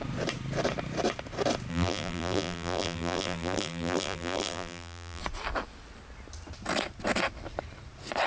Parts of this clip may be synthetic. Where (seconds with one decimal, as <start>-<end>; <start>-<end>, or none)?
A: 1.7-5.2